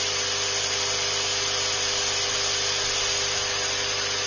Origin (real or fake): real